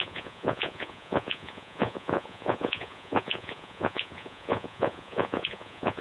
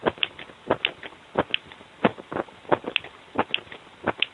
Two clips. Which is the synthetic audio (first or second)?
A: first